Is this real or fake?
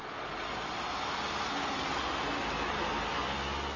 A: real